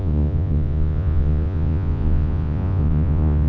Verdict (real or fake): fake